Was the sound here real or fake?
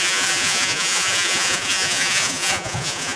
fake